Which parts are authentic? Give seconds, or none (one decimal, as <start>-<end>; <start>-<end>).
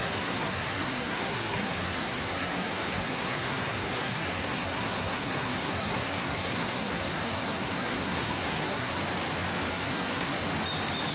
9.0-9.7; 10.4-11.1